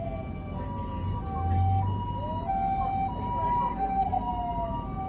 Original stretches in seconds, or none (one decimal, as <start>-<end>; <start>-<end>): 0.0-3.7; 4.3-5.1